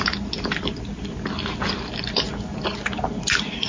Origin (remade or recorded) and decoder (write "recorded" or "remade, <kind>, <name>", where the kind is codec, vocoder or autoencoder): recorded